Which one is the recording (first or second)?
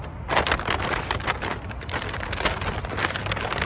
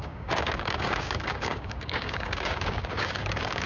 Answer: first